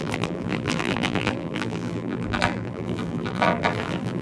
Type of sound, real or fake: fake